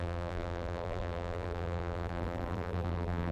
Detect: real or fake fake